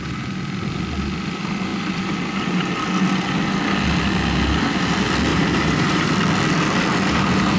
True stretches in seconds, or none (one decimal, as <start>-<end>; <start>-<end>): 0.0-5.3; 6.1-7.6